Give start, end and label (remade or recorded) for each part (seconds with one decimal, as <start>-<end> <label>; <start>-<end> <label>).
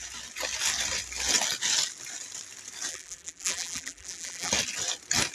0.0-2.9 recorded; 2.9-4.5 remade; 4.5-5.3 recorded